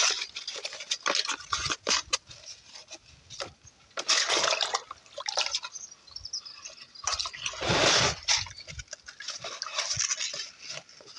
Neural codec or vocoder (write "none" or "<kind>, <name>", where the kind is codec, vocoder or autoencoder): none